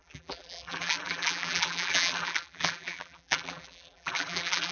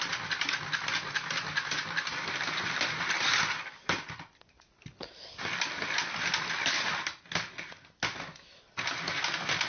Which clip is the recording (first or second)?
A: second